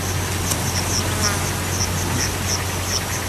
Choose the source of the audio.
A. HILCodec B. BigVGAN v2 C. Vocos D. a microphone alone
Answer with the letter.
D